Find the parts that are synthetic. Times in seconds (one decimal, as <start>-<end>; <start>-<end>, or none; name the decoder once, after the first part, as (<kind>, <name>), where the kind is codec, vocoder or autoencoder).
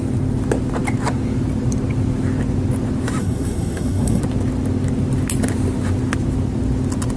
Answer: 3.2-4.2 (codec, SNAC)